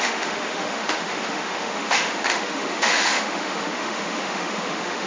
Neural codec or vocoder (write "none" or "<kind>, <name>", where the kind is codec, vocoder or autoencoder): autoencoder, DAC-VAE